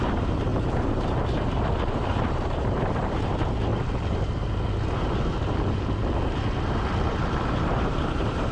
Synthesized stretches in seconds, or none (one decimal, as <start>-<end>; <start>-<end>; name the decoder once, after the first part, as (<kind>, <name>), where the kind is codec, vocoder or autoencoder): 0.0-3.7 (vocoder, BigVGAN v2); 7.5-8.5